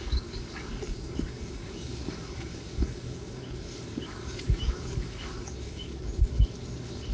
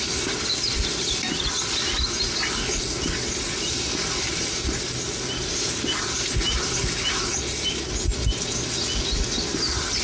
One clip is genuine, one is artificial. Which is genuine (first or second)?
second